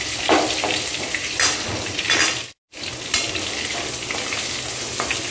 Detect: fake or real real